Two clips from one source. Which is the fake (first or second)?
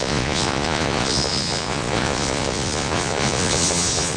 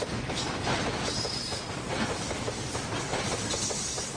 first